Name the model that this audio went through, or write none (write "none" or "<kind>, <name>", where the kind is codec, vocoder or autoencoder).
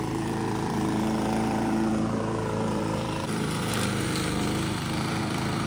vocoder, BigVGAN v2